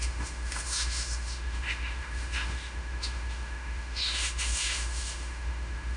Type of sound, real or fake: fake